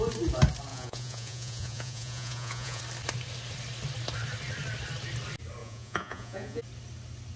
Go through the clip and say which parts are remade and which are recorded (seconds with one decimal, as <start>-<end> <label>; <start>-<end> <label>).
0.0-0.7 recorded; 0.7-2.8 remade; 2.8-5.6 recorded; 5.6-6.6 remade; 6.6-7.4 recorded